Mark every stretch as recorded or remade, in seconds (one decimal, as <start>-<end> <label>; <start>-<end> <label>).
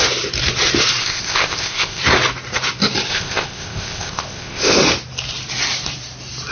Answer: 0.0-1.0 recorded; 1.0-2.0 remade; 2.0-3.1 recorded; 3.1-4.8 remade; 4.8-6.5 recorded